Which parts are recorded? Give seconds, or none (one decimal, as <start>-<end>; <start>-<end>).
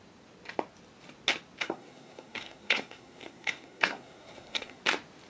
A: 0.0-1.6; 4.8-5.3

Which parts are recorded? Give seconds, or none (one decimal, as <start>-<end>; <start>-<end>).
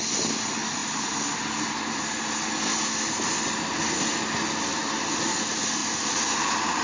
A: 0.0-5.8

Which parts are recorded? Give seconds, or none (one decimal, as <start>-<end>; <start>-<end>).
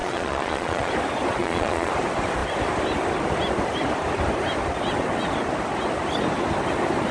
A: 0.9-1.4; 1.9-7.1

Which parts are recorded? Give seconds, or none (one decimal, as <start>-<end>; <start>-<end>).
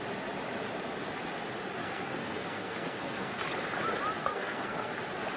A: 0.0-1.8; 3.4-4.2; 4.9-5.4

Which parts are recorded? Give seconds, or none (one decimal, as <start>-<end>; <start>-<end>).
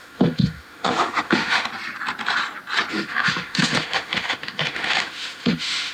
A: 1.7-2.9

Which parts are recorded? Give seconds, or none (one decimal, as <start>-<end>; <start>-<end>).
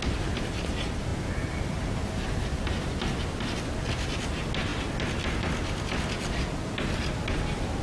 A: 0.0-7.8